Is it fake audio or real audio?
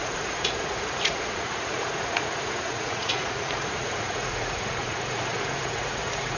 fake